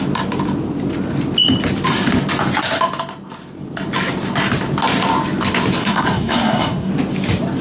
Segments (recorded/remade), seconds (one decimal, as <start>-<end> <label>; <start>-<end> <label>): 0.0-5.8 recorded; 5.8-6.9 remade; 6.9-7.6 recorded